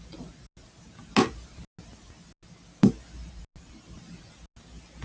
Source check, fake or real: real